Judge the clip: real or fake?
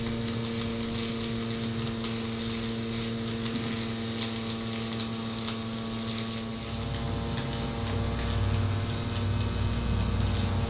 real